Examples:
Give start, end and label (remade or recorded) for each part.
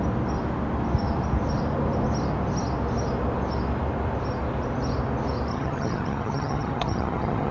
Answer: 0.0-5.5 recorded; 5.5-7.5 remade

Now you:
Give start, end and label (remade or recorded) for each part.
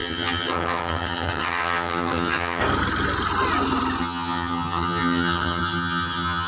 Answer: 0.0-2.6 remade; 2.6-4.0 recorded; 4.0-6.5 remade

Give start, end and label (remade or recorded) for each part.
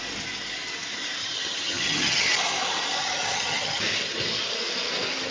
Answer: 0.0-1.2 recorded; 1.2-2.3 remade; 2.3-3.0 recorded; 3.0-3.8 remade; 3.8-5.3 recorded